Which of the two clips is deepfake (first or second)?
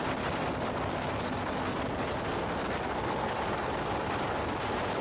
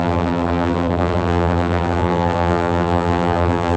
second